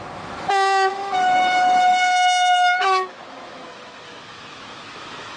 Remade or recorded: remade